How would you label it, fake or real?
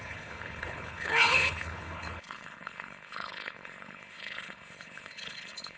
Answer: fake